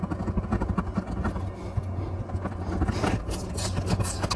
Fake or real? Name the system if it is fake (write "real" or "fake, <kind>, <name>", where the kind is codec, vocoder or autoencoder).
real